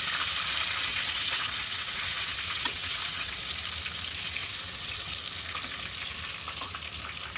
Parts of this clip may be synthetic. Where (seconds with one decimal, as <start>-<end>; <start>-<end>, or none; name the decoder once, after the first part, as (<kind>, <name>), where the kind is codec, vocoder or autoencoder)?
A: 0.9-3.5 (vocoder, WaveNeXt); 4.4-5.1